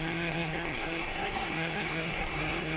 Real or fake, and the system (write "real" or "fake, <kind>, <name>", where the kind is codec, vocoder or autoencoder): fake, codec, SNAC